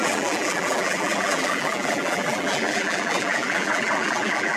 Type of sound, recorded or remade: remade